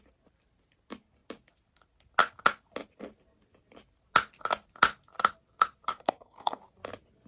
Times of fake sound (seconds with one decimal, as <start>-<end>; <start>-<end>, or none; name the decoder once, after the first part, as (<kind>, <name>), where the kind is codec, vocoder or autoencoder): 6.0-6.6 (codec, SNAC)